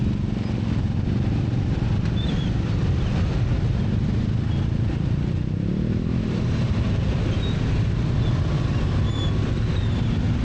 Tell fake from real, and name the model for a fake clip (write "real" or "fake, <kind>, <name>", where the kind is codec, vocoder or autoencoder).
real